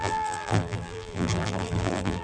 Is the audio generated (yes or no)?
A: yes